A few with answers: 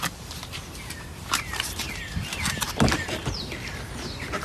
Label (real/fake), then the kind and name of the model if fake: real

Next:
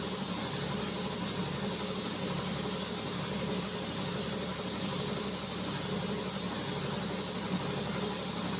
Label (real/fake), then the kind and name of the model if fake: real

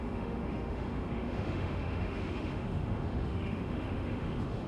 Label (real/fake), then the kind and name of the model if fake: fake, autoencoder, DAC-VAE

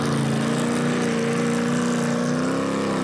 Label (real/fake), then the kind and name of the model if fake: real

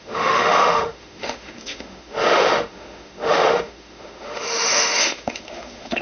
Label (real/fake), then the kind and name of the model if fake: fake, autoencoder, DAC-VAE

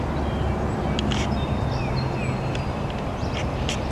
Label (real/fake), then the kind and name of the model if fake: real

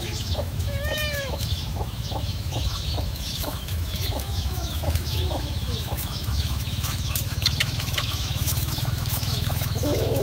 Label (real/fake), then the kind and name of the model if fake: fake, autoencoder, DAC-VAE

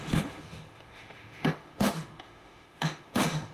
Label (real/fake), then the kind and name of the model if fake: fake, autoencoder, DAC-VAE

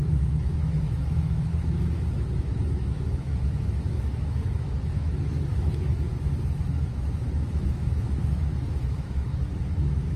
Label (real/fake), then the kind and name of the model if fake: fake, autoencoder, DAC-VAE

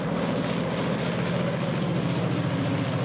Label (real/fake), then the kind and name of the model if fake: real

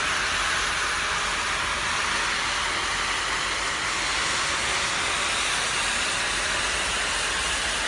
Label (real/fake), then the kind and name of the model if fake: real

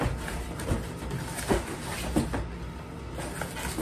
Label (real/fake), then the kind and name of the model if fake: real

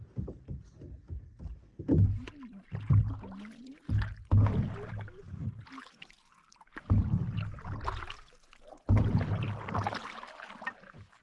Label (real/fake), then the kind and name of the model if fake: real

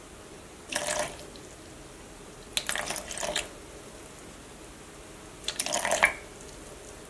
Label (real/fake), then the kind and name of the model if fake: real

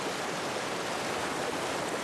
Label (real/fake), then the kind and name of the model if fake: real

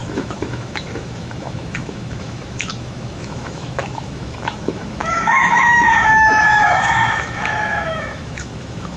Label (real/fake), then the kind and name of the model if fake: fake, autoencoder, DAC-VAE